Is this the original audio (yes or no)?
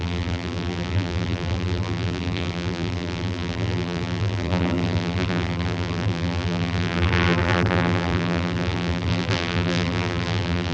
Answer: no